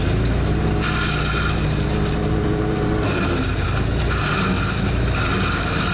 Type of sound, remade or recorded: remade